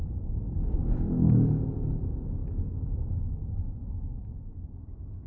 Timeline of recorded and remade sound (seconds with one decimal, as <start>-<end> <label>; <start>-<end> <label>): 0.0-3.4 remade; 3.4-4.2 recorded; 4.2-5.3 remade